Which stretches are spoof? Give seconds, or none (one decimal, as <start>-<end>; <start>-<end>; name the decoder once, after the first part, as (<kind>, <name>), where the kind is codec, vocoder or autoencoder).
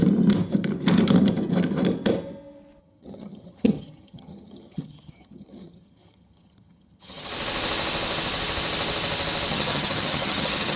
2.8-7.3 (vocoder, HiFi-GAN); 9.5-10.8